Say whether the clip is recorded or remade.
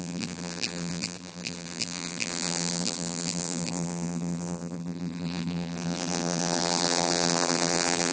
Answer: remade